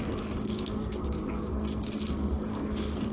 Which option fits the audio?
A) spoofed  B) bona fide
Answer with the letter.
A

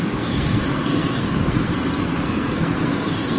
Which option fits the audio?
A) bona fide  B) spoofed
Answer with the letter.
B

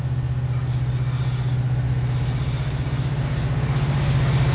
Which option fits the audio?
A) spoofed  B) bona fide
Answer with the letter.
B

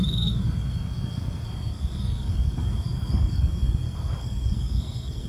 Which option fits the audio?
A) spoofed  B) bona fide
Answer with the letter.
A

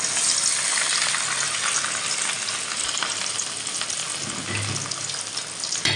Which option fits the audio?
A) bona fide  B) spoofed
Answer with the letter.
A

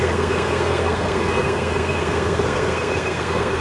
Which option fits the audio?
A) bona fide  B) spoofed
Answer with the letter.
B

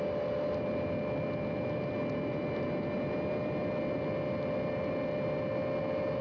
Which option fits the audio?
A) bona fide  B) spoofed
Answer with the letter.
A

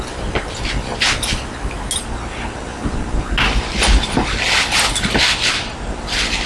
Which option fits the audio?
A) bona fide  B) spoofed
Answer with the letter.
A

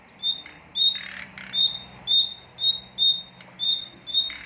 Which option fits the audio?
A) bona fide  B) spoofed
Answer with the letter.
A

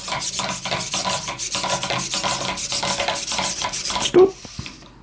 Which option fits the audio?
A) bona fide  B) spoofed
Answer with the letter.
A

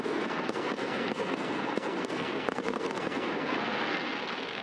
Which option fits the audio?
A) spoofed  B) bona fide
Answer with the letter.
A